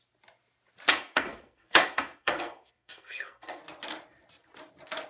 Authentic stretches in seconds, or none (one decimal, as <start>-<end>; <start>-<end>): 0.0-0.9; 3.6-5.1